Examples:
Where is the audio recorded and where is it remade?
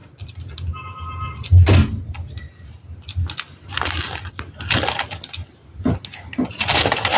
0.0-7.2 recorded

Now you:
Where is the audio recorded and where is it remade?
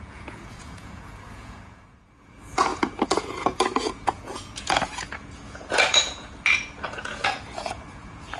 0.0-8.4 remade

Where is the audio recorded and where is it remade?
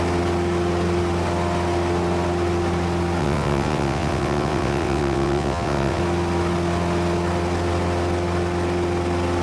0.0-3.2 recorded; 3.2-6.0 remade; 6.0-9.4 recorded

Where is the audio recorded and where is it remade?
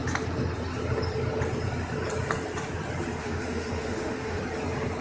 0.0-3.2 recorded; 3.2-4.4 remade; 4.4-5.0 recorded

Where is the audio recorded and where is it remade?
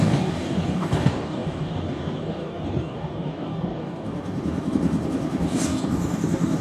0.0-6.6 remade